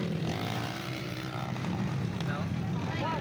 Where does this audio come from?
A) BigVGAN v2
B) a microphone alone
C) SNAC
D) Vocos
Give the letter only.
A